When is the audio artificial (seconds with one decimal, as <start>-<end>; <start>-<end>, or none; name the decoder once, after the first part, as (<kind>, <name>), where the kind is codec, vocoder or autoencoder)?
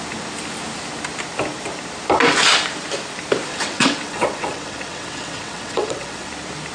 3.5-6.3 (vocoder, WaveNeXt)